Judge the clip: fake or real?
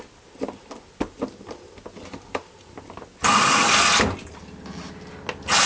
real